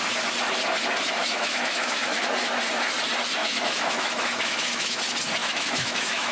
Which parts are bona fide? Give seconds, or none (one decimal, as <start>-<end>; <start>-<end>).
0.0-1.2; 2.2-3.4; 5.0-5.4